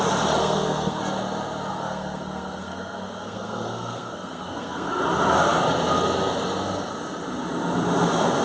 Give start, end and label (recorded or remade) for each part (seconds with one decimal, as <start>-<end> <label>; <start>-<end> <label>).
0.0-0.4 recorded; 0.4-1.0 remade; 1.0-1.7 recorded; 1.7-5.0 remade; 5.0-8.4 recorded